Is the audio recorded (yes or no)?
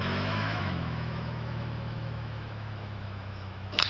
no